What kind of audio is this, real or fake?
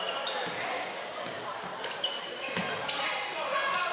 real